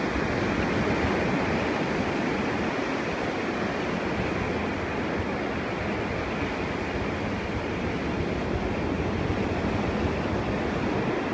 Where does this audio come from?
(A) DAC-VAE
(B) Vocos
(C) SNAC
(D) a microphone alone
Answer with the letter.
D